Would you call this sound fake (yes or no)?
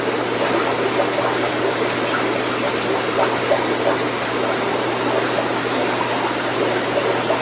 no